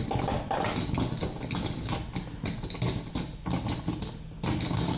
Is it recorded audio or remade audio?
recorded